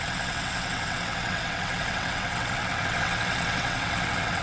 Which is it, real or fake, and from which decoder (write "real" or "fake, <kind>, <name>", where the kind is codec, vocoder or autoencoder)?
fake, vocoder, WaveNeXt